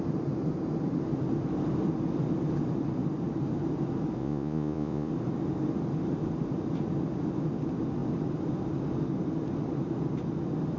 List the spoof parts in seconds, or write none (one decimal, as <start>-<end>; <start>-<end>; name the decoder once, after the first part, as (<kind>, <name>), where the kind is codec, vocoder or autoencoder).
4.2-5.1 (vocoder, Vocos)